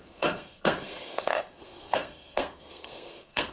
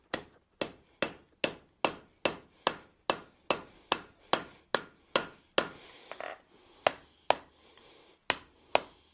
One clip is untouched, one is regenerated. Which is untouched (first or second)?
second